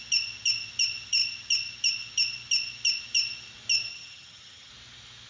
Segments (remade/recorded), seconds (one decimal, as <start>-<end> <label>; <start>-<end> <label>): 0.0-3.9 recorded; 3.9-4.7 remade; 4.7-5.3 recorded